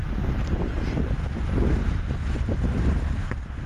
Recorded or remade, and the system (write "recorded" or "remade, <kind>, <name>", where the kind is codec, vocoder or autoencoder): recorded